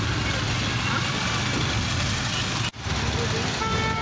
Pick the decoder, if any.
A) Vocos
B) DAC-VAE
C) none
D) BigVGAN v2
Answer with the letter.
C